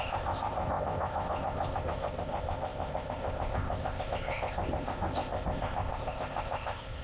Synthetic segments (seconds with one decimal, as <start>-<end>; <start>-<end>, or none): 0.0-7.0